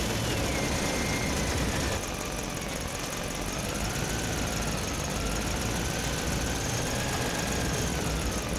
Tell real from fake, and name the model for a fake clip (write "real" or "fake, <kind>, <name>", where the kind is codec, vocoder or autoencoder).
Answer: real